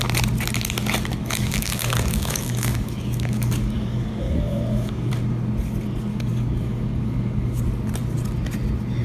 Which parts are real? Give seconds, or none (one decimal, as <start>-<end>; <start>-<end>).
0.0-1.2; 5.1-6.1; 7.6-9.0